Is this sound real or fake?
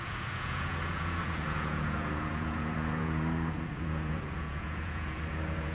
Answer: fake